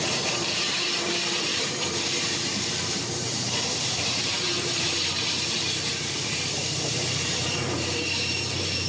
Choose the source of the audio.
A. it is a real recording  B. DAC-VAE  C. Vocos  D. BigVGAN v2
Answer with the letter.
D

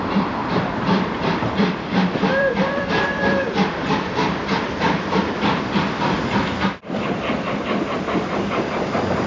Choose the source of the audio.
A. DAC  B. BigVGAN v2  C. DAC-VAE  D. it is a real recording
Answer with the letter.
B